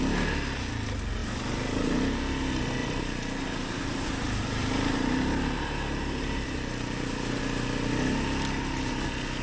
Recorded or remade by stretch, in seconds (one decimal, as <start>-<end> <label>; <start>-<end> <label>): 0.0-2.8 recorded; 2.8-7.4 remade; 7.4-9.4 recorded